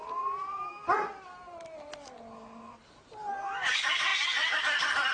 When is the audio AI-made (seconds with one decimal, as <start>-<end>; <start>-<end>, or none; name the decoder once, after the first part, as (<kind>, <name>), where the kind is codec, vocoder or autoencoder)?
none